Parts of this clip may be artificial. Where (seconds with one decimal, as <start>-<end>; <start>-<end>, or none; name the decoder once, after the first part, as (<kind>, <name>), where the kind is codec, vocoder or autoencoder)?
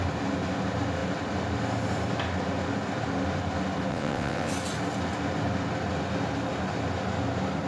3.9-4.5 (vocoder, WaveNeXt)